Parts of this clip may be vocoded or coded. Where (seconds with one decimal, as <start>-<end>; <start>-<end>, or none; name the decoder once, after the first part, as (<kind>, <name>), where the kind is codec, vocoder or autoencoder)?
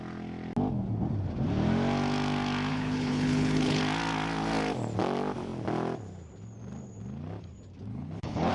2.7-3.8 (codec, HILCodec); 7.9-8.5